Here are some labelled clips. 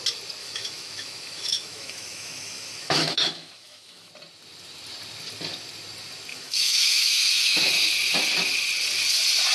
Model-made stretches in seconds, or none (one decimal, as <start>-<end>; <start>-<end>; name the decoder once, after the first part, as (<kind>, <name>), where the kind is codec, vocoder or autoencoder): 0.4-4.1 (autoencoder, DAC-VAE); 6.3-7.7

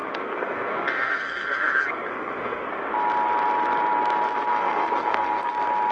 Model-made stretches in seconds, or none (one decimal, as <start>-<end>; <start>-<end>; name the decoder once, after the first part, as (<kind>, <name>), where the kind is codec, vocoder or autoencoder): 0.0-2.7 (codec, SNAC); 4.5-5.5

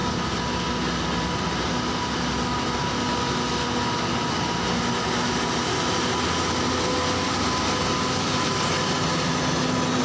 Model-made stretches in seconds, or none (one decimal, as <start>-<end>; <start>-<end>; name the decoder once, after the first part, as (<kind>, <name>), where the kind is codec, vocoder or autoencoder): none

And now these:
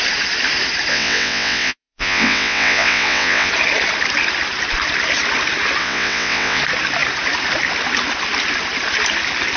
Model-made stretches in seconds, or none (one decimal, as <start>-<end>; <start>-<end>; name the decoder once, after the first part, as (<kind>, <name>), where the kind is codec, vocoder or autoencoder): 0.9-3.5 (vocoder, WaveNeXt); 5.8-6.6

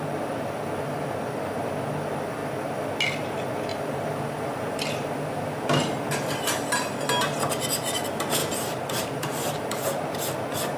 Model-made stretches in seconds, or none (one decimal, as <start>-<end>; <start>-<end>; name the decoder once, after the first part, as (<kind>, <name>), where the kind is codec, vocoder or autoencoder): 3.7-6.4 (vocoder, BigVGAN v2); 8.4-10.3